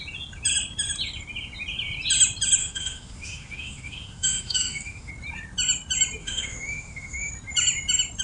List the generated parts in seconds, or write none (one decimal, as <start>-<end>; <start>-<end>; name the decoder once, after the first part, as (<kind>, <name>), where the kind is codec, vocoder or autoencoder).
2.6-5.1 (autoencoder, DAC-VAE); 6.2-7.3